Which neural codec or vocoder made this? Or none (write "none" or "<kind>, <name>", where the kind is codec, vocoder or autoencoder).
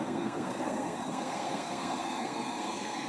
codec, SNAC